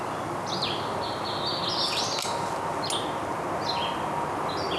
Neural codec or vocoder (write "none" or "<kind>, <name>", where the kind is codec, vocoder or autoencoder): none